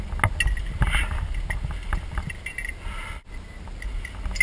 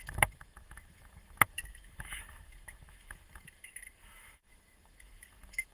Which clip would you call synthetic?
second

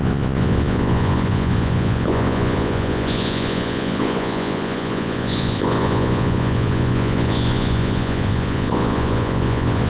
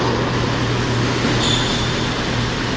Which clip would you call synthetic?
first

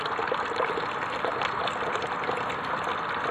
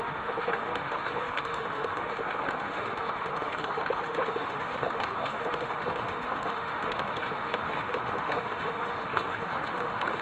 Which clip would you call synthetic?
second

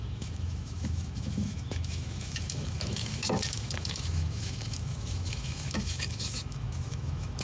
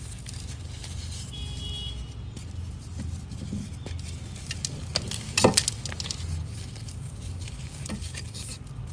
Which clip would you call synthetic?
first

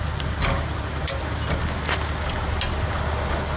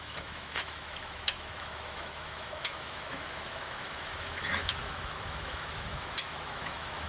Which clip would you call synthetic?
second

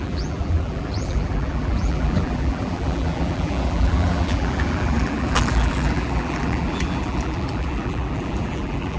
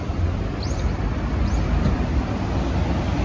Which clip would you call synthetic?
first